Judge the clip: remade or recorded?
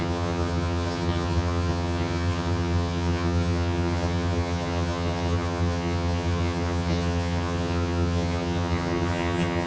remade